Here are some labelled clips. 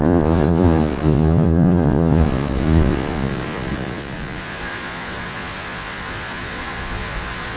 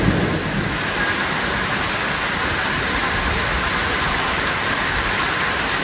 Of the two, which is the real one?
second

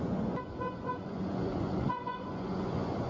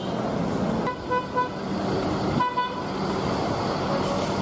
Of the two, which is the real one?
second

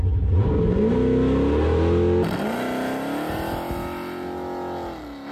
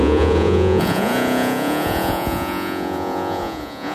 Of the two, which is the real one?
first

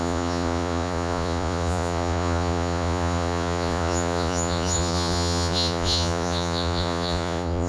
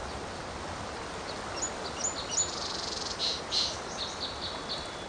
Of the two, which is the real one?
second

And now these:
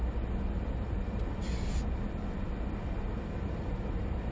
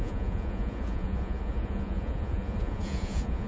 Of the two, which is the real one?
first